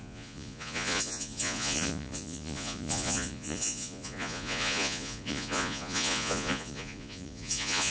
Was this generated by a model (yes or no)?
yes